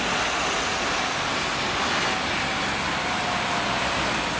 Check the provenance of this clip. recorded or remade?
recorded